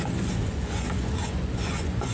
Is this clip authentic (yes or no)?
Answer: no